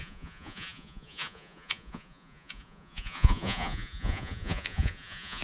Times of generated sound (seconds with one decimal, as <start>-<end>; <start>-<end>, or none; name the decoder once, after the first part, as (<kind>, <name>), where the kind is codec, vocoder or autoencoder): 0.0-5.4 (vocoder, Vocos)